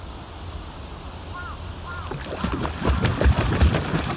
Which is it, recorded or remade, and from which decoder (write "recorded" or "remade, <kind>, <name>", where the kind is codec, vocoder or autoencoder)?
recorded